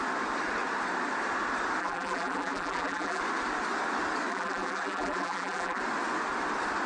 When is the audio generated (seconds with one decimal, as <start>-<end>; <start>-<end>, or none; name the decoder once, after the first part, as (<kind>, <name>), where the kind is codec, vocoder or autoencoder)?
1.8-3.2 (vocoder, BigVGAN v2); 4.3-5.8